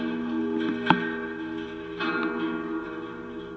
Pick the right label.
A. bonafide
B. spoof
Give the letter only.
A